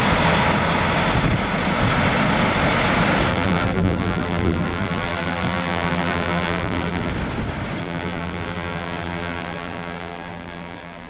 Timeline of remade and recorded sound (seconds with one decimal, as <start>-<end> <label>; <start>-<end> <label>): 0.0-3.3 recorded; 3.3-7.1 remade; 7.1-7.8 recorded; 7.8-11.1 remade